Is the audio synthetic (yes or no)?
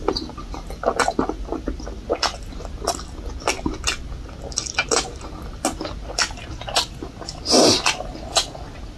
no